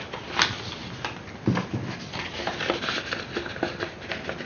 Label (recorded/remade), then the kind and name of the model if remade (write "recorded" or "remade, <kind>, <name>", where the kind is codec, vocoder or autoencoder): recorded